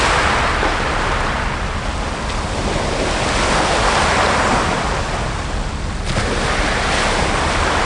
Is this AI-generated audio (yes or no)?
no